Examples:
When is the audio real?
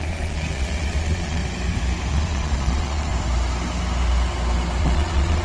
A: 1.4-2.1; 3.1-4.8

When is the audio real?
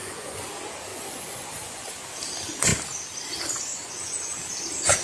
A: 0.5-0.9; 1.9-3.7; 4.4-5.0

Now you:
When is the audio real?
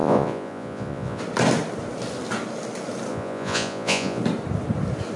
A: 1.2-3.1; 4.2-5.2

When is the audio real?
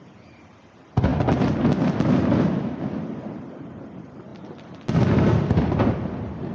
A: 0.0-6.5